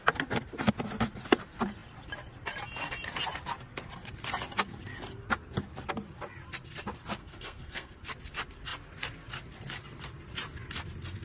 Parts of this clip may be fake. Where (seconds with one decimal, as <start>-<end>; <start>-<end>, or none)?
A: 7.2-8.0